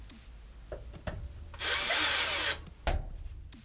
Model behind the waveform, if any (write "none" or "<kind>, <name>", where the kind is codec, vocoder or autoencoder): none